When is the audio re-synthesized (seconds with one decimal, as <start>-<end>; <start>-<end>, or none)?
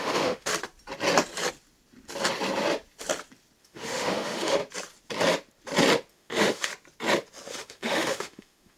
0.0-0.5; 3.6-4.6; 6.1-6.7; 7.5-8.8